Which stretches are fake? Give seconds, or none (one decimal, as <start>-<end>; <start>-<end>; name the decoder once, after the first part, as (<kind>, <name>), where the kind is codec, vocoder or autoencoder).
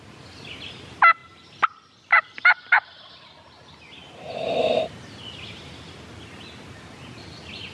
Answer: none